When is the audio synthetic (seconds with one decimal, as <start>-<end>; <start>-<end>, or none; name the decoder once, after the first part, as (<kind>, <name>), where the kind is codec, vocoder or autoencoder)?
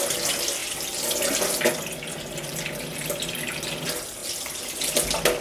none